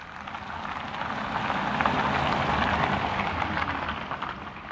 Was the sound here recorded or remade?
recorded